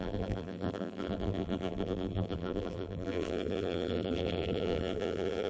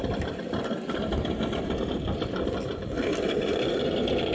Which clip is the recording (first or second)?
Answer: second